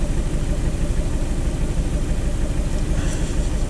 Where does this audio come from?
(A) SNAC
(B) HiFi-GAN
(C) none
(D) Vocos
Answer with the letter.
C